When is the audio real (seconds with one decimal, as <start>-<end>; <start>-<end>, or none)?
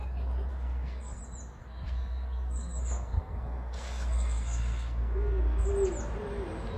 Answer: 0.0-0.5; 1.2-1.6; 5.7-6.8